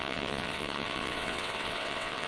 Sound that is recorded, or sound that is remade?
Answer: remade